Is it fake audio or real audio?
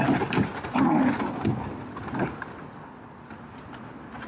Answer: real